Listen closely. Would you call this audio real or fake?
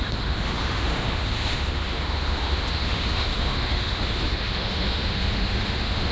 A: fake